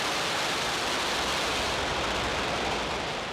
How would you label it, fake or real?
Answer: real